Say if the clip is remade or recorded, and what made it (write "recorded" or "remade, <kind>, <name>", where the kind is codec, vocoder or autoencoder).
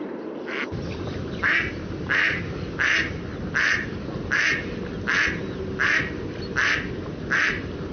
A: recorded